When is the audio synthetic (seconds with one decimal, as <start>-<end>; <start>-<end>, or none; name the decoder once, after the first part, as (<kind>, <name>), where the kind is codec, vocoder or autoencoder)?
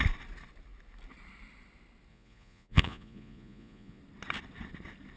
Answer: 2.1-4.0 (vocoder, Vocos)